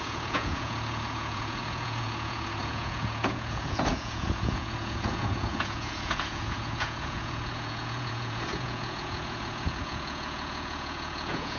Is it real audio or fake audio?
fake